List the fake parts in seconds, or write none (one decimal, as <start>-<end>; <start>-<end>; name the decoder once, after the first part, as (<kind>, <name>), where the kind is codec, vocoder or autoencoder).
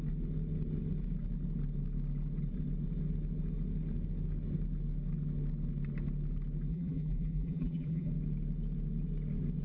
6.7-8.1 (vocoder, BigVGAN v2)